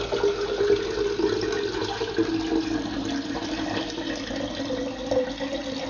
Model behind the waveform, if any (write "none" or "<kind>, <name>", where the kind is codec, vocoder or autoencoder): none